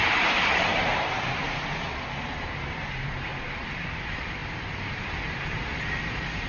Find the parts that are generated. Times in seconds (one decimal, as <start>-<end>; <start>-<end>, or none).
0.0-3.3; 4.0-4.4; 6.0-6.5

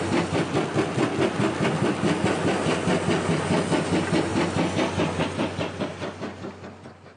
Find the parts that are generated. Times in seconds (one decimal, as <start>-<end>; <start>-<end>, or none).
none

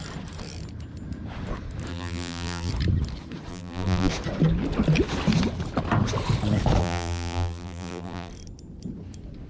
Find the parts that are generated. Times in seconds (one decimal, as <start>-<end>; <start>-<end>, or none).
1.9-2.7; 3.5-4.1; 6.8-8.3

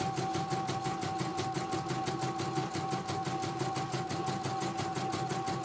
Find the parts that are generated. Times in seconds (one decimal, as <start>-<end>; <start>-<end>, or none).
none

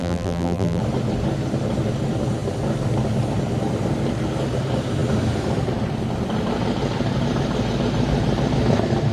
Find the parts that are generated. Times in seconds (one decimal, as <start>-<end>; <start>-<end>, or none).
0.0-0.8